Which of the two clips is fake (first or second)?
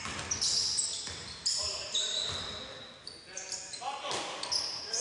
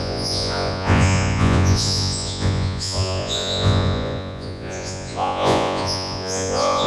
second